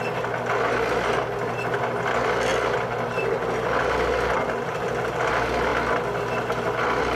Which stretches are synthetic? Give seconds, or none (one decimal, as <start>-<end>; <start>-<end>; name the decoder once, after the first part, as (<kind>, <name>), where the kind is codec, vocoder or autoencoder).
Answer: none

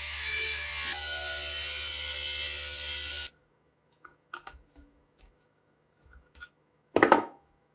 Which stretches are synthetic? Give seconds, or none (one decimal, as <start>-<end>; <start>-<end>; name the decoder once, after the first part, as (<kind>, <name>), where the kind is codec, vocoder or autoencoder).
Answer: 0.0-0.7 (autoencoder, DAC-VAE); 3.4-7.7

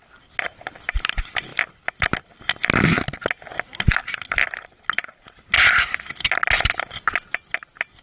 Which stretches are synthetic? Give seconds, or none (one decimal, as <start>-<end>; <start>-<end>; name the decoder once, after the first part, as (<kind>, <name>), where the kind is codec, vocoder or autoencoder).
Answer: none